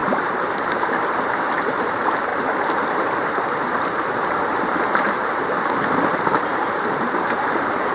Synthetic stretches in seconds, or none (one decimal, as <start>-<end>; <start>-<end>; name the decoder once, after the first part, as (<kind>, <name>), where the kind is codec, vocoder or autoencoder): 0.0-2.3 (vocoder, BigVGAN v2); 3.9-7.9